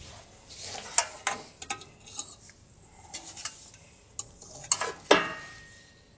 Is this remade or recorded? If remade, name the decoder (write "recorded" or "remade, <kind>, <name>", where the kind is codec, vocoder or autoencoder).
recorded